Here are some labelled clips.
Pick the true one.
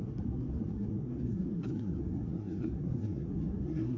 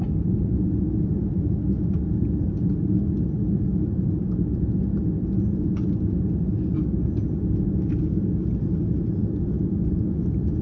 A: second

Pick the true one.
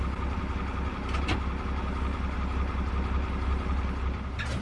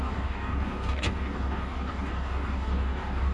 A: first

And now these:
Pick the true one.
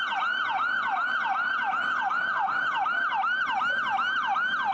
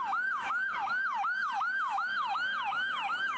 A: first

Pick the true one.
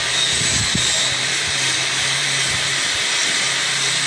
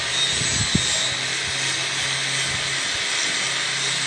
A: second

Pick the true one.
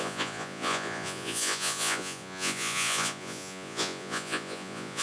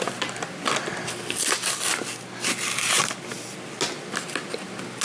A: second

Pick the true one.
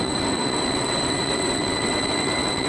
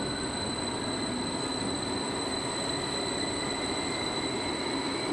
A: second